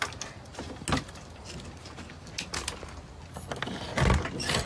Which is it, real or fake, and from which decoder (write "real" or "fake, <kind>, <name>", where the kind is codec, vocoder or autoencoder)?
real